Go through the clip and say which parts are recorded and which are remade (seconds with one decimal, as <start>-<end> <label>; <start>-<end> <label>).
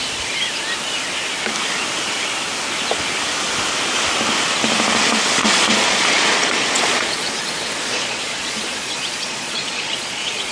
0.0-5.4 recorded; 5.4-10.5 remade